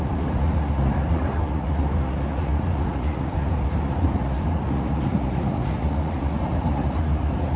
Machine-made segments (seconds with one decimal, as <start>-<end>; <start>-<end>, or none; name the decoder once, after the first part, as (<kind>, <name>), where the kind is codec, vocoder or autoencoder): 0.0-7.6 (vocoder, Vocos)